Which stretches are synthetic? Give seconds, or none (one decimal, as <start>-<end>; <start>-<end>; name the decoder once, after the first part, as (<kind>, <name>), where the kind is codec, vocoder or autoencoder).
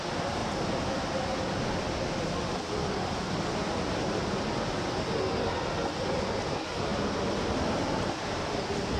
none